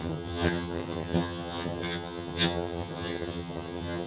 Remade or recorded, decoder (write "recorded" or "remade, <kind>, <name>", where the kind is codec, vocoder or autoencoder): remade, vocoder, HiFi-GAN